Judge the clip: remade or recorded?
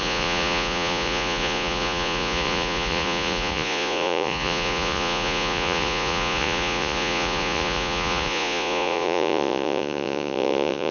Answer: remade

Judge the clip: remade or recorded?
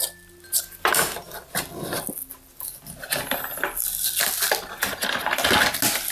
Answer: recorded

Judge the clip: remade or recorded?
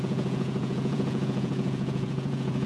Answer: remade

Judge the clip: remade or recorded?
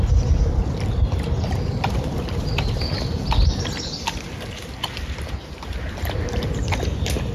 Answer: recorded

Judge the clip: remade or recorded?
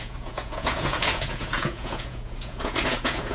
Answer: remade